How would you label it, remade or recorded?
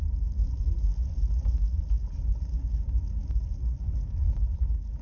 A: recorded